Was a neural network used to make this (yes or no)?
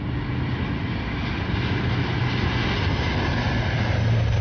no